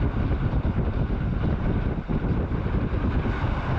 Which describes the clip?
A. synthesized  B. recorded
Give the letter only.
B